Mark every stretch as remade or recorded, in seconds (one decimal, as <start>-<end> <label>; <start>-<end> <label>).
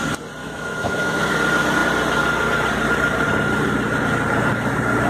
0.0-0.4 recorded; 0.4-1.2 remade; 1.2-5.1 recorded